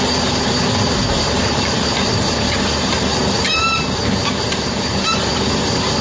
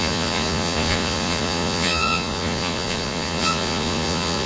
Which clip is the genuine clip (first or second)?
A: first